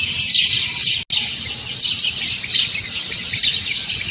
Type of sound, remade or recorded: recorded